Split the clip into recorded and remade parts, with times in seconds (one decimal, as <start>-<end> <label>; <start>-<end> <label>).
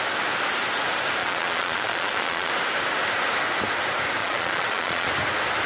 0.0-1.2 recorded; 1.2-2.5 remade; 2.5-4.2 recorded; 4.2-5.1 remade; 5.1-5.7 recorded